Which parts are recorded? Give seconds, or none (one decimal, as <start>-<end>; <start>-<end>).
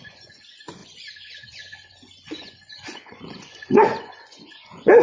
none